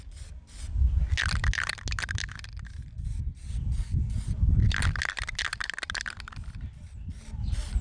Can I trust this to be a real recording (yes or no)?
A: yes